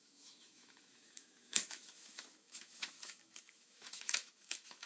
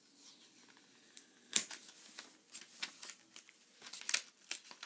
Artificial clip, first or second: first